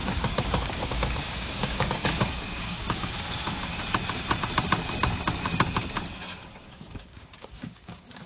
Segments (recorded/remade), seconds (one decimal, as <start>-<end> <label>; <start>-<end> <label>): 0.0-3.8 remade; 3.8-6.4 recorded; 6.4-8.3 remade